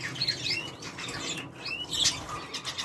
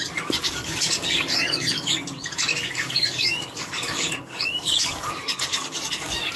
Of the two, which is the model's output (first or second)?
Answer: second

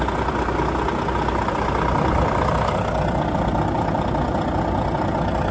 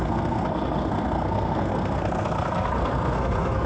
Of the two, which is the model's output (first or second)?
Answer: second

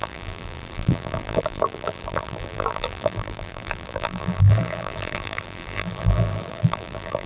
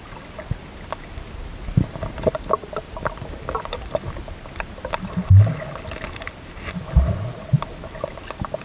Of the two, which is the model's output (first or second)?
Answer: first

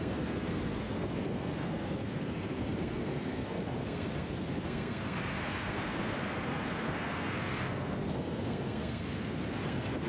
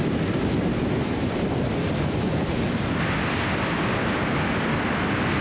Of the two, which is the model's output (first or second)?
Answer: first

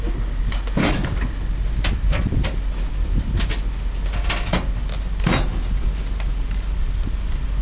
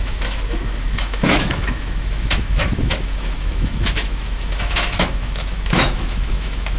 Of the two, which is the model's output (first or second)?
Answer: second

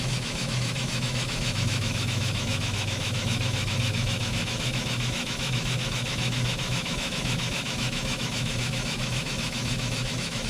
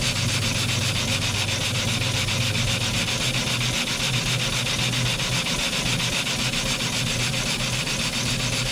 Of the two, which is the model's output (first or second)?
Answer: first